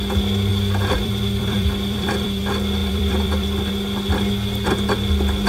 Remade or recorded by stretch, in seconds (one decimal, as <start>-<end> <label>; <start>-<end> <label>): 0.0-0.5 recorded; 0.5-2.4 remade; 2.4-2.8 recorded; 2.8-3.7 remade; 3.7-5.5 recorded